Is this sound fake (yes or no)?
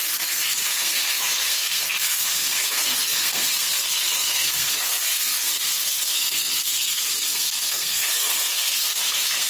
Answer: yes